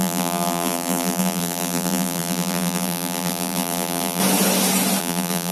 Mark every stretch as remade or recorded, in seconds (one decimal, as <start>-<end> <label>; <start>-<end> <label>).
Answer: 0.0-4.2 remade; 4.2-5.0 recorded; 5.0-5.5 remade